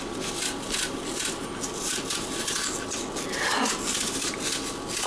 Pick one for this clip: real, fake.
real